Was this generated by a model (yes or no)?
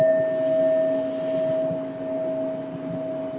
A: no